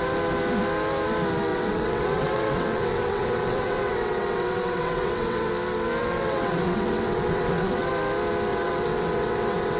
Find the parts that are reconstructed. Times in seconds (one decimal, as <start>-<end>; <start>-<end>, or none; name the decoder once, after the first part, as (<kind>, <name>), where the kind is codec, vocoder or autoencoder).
1.5-5.5 (vocoder, WaveNeXt); 6.0-7.9; 8.5-9.8